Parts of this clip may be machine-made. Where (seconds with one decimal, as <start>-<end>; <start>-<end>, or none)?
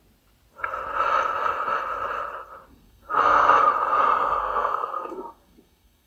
2.7-3.7; 4.4-6.1